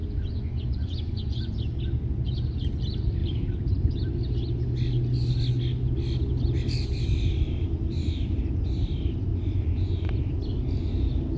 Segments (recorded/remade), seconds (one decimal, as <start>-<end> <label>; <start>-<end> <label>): 0.0-1.5 remade; 1.5-9.3 recorded; 9.3-10.1 remade; 10.1-11.4 recorded